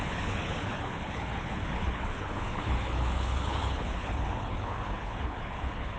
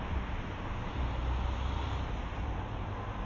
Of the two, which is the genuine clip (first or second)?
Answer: second